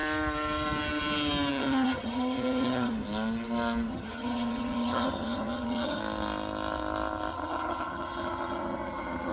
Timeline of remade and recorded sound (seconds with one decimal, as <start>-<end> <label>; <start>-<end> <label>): 0.0-1.5 recorded; 1.5-2.9 remade; 2.9-3.9 recorded; 3.9-6.0 remade; 6.0-7.3 recorded; 7.3-9.3 remade